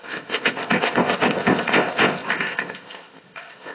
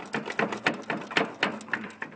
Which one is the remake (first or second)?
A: first